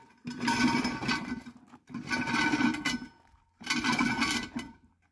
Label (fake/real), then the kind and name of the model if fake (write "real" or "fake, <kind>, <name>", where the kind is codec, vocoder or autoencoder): real